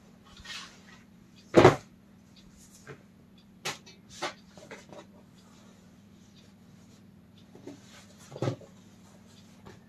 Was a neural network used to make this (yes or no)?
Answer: no